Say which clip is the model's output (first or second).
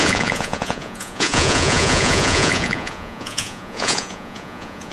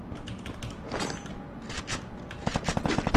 first